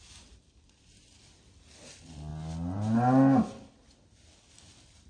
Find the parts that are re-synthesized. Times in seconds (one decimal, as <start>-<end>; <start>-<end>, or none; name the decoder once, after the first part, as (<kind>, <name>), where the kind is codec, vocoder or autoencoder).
none